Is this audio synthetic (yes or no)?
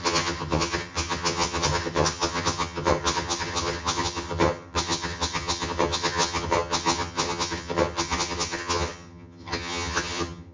yes